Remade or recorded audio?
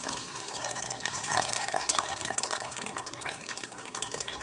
remade